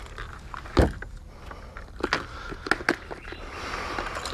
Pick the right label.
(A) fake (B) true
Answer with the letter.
B